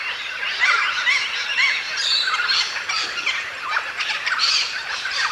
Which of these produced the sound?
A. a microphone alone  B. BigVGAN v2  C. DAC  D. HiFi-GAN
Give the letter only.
B